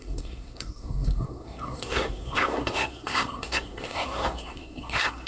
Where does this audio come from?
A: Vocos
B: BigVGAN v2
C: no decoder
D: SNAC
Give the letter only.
D